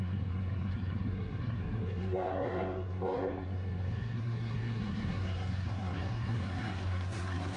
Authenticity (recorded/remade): remade